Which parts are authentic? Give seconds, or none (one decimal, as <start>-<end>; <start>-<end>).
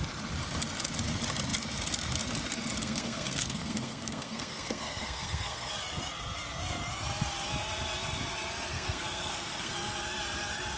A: 0.0-2.8; 5.7-8.7; 9.7-10.8